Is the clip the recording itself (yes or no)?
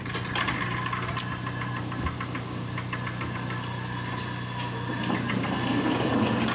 yes